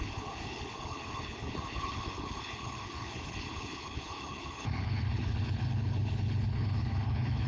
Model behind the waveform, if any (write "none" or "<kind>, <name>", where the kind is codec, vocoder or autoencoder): codec, HILCodec